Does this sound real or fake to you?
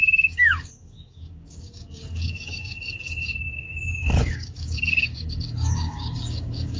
fake